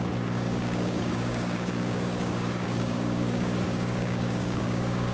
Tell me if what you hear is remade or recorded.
remade